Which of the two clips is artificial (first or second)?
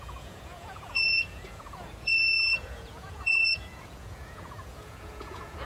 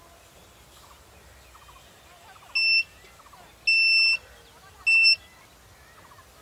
first